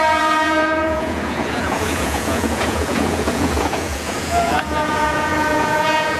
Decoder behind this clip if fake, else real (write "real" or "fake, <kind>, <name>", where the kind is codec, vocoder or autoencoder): fake, vocoder, Vocos